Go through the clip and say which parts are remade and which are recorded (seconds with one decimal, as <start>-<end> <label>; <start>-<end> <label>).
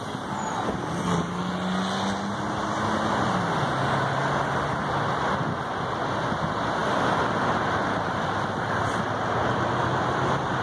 0.0-10.6 recorded